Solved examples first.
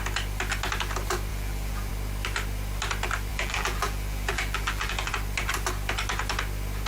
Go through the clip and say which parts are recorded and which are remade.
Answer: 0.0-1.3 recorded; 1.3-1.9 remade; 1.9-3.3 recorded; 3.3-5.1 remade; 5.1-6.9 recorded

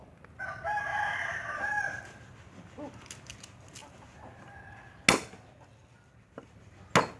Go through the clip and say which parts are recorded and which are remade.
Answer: 0.0-0.9 recorded; 0.9-1.8 remade; 1.8-7.2 recorded

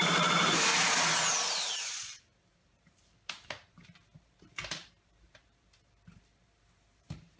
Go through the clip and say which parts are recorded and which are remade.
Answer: 0.0-0.7 remade; 0.7-1.5 recorded; 1.5-7.4 remade

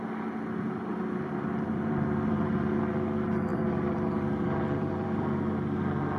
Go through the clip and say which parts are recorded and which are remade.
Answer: 0.0-0.9 recorded; 0.9-2.8 remade; 2.8-3.5 recorded; 3.5-5.4 remade; 5.4-6.2 recorded

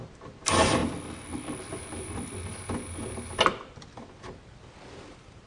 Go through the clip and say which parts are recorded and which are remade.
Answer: 0.0-5.5 recorded

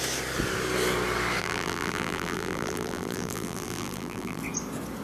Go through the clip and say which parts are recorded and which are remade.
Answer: 0.0-1.4 recorded; 1.4-4.4 remade; 4.4-5.0 recorded

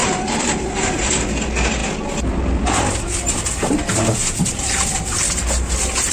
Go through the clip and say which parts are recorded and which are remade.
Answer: 0.0-1.2 remade; 1.2-4.2 recorded; 4.2-6.1 remade

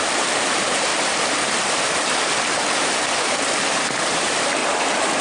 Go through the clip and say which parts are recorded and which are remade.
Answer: 0.0-0.9 remade; 0.9-4.0 recorded; 4.0-4.6 remade; 4.6-5.2 recorded